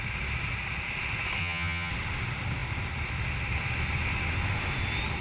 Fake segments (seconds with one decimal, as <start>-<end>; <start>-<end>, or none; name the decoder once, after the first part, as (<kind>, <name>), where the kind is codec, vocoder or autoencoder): 1.4-1.9 (vocoder, HiFi-GAN)